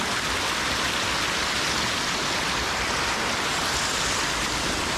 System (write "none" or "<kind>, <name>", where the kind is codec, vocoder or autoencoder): none